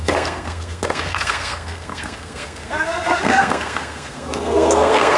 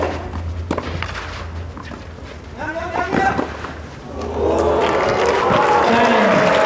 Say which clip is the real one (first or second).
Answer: second